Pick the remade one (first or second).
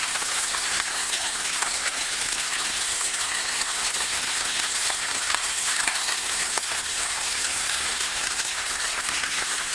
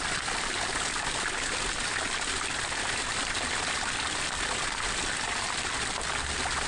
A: first